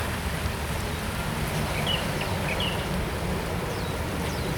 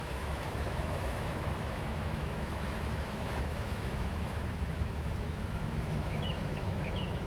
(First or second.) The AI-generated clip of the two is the second